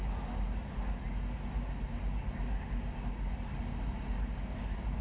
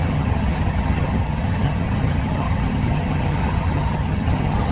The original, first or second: first